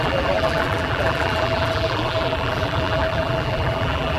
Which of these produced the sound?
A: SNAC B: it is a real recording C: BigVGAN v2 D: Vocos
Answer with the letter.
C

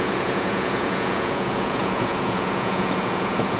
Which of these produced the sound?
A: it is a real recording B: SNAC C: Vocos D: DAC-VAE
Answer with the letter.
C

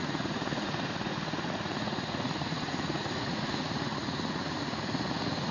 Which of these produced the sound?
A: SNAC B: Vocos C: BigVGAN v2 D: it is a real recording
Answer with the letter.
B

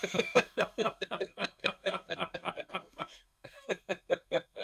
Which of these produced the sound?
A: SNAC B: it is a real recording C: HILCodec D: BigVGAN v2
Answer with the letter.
A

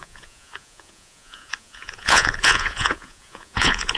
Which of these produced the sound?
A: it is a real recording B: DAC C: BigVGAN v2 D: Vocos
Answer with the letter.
D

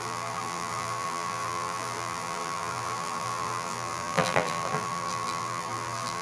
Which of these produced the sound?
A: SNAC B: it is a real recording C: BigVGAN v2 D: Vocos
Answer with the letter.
C